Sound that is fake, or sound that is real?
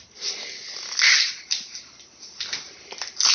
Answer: real